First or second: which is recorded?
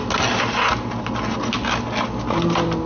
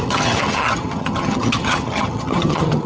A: first